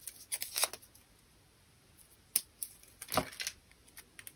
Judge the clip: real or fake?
real